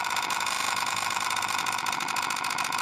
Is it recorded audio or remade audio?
remade